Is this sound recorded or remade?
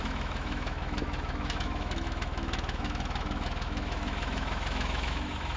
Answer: remade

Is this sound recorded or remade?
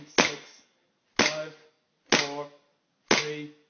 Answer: recorded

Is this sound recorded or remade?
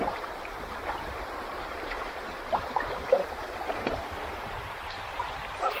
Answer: remade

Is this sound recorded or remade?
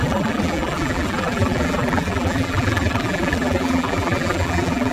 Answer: remade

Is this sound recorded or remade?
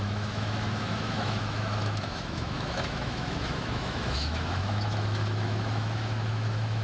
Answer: remade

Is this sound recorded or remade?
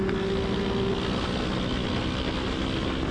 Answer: recorded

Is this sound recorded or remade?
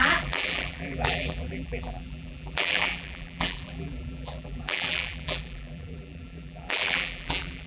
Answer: remade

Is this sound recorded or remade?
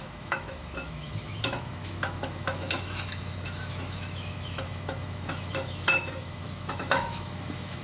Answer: remade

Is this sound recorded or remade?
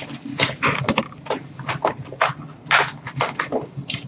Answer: recorded